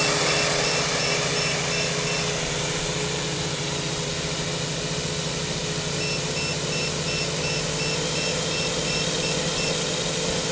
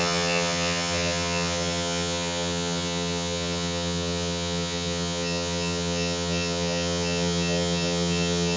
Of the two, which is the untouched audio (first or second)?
first